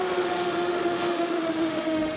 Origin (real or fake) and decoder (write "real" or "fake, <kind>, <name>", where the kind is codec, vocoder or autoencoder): fake, autoencoder, DAC-VAE